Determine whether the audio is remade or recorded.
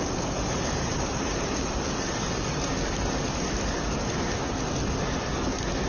recorded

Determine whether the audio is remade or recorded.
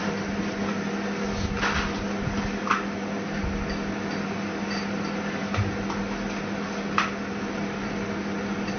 recorded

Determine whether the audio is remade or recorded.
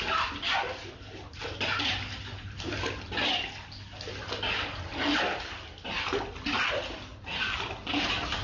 recorded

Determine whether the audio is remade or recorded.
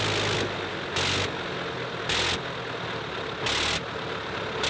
recorded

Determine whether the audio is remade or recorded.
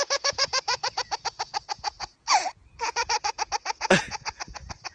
remade